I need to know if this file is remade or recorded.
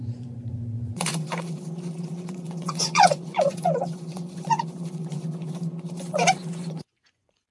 remade